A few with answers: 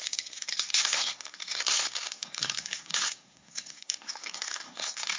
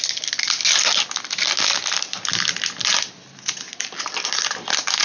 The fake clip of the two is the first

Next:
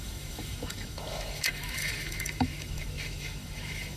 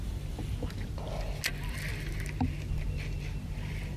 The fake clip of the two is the first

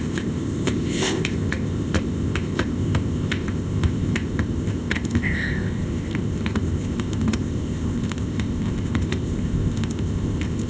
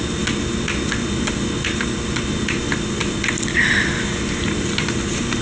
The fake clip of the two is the first